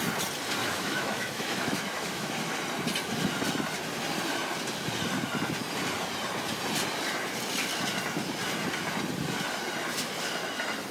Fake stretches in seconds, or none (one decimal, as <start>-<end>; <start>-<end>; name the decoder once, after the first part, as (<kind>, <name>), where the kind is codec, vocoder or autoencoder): 0.6-2.3 (autoencoder, DAC-VAE)